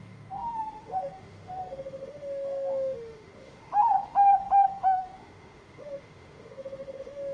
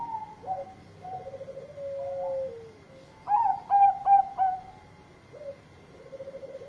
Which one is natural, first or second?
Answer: second